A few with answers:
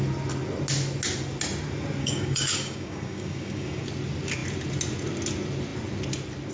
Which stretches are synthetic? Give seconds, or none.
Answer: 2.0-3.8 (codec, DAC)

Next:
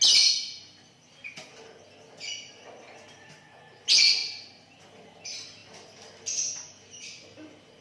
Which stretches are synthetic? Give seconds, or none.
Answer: none

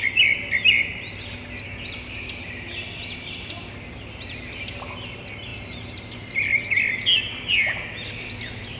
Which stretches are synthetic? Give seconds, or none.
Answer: none